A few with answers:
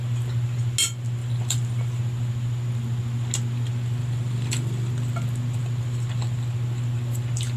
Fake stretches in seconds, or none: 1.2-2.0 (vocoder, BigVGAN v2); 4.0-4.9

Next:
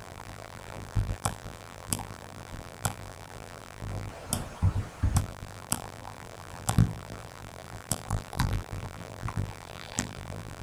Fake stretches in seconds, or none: 0.0-4.1 (vocoder, BigVGAN v2); 5.2-10.6

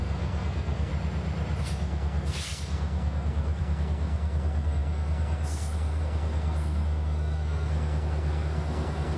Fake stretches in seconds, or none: 0.0-0.9 (codec, SNAC); 1.6-9.2

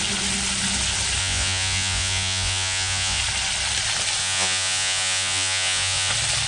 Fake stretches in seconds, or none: 1.2-3.2 (vocoder, Vocos); 4.2-6.1

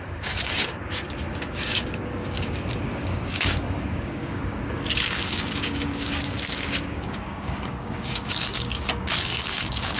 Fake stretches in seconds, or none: 0.0-0.8 (codec, DAC); 1.4-10.0

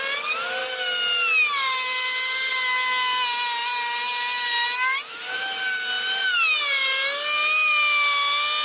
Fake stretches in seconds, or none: none